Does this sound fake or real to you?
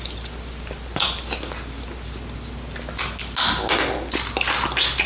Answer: real